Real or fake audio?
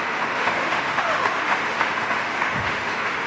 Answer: fake